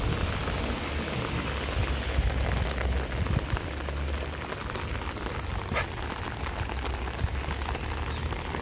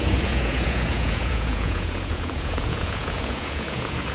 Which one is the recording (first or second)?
first